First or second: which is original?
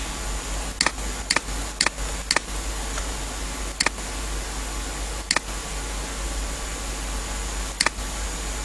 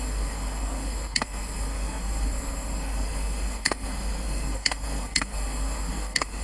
first